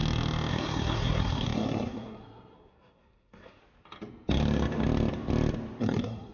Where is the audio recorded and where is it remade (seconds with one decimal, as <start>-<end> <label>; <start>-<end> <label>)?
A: 0.0-0.5 recorded; 0.5-3.6 remade; 3.6-5.8 recorded; 5.8-6.3 remade